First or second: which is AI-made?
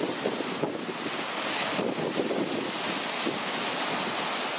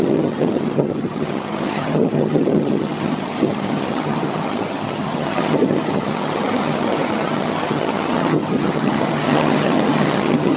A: second